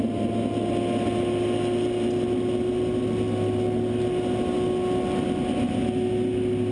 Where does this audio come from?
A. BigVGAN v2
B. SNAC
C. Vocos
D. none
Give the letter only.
D